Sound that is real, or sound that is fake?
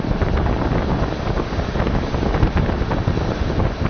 real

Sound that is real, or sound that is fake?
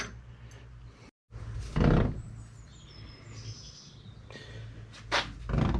real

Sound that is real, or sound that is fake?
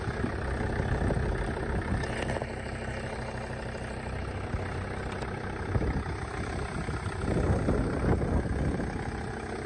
real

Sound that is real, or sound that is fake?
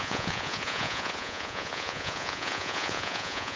fake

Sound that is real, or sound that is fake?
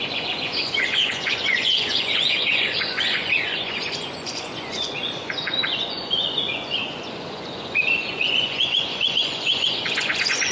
fake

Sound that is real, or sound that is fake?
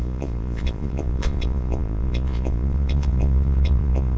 fake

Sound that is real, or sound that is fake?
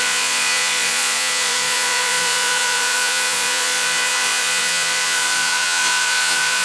fake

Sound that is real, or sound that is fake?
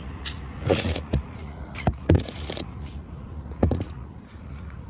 fake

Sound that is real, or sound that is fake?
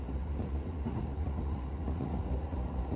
fake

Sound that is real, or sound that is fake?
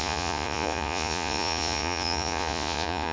fake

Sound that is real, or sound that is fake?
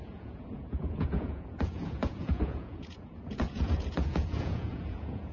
fake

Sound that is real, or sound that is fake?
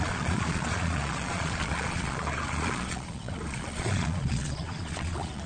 fake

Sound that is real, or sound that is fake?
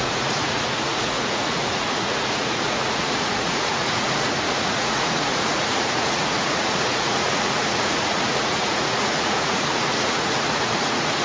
fake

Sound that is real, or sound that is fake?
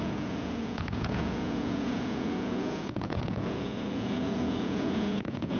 fake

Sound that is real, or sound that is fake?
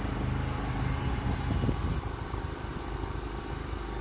real